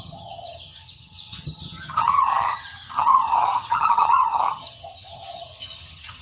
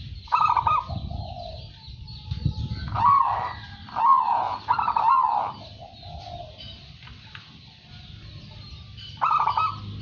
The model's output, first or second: first